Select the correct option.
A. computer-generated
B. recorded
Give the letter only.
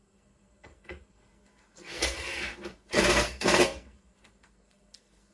A